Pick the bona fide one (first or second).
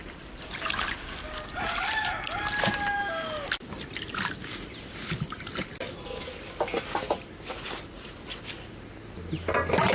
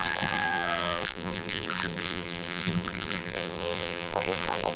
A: first